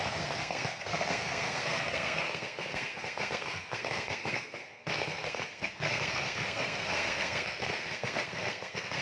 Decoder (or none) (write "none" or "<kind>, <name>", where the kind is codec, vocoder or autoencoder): codec, SNAC